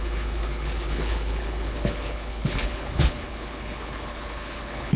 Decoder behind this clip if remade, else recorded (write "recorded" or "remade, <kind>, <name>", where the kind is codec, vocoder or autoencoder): remade, codec, HILCodec